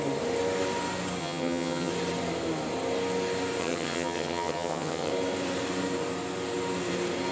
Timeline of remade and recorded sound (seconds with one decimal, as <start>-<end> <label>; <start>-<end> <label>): 0.0-1.2 recorded; 1.2-1.9 remade; 1.9-3.6 recorded; 3.6-5.1 remade; 5.1-7.3 recorded